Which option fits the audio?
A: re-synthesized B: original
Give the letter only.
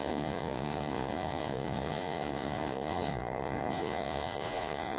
A